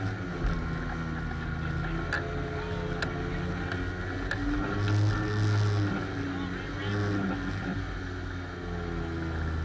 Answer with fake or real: real